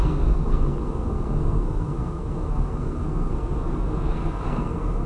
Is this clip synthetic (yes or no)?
yes